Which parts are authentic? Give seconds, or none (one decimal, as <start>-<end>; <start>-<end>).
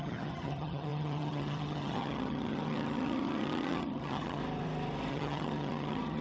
4.4-5.1